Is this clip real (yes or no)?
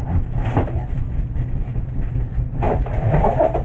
yes